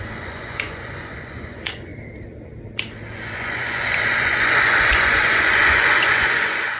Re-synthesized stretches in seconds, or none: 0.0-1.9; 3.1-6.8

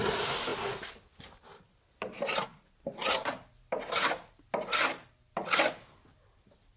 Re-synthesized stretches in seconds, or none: 0.0-6.8

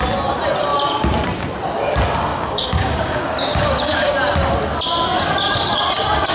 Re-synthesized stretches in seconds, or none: 2.3-4.1

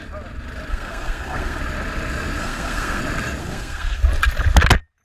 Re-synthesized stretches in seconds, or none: 0.7-1.6; 2.4-3.0; 3.4-4.0

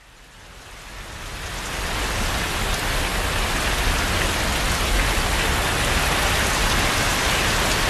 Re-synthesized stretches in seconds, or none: 4.5-5.3

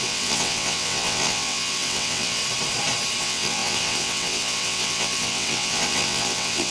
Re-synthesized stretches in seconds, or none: 0.0-2.4; 3.2-6.7

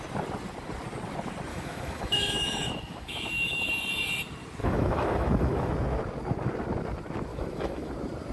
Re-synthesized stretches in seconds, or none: 1.5-3.6; 4.6-5.7; 7.3-7.9